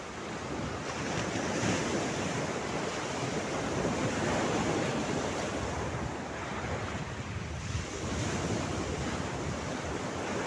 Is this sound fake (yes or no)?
no